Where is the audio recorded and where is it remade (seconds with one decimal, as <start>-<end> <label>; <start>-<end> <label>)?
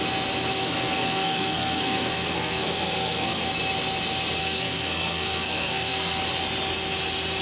0.0-0.5 recorded; 0.5-3.5 remade; 3.5-4.4 recorded; 4.4-6.2 remade; 6.2-7.4 recorded